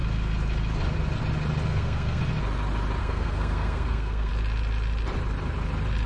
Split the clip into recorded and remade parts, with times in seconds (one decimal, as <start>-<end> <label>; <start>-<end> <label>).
0.0-1.7 recorded; 1.7-2.2 remade; 2.2-3.0 recorded; 3.0-4.3 remade; 4.3-6.1 recorded